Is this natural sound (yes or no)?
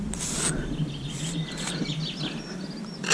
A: yes